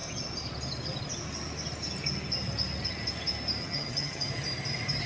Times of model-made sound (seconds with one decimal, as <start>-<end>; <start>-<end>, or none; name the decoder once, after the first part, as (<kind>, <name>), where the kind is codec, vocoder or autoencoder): 3.6-4.3 (vocoder, HiFi-GAN)